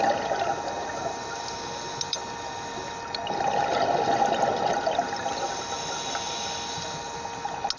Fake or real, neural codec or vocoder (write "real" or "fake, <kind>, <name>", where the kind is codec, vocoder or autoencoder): real